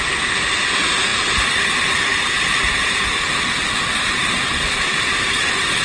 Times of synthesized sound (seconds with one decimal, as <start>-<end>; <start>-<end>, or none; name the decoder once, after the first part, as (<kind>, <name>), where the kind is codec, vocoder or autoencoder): none